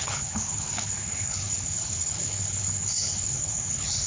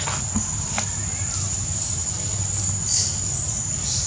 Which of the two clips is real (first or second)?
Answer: second